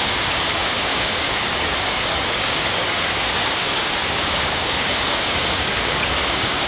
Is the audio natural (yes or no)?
no